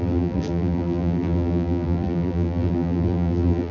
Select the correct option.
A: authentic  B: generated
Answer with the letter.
B